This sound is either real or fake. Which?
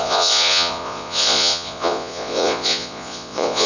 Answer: fake